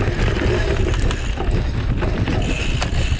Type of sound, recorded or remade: recorded